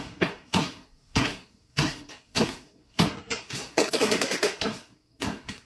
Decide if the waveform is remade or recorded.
remade